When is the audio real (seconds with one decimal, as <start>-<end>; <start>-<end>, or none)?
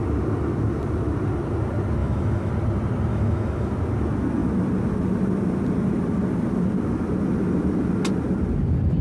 0.0-2.0; 2.5-3.1; 3.7-9.0